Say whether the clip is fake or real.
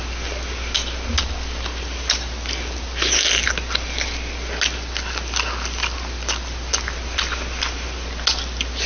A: real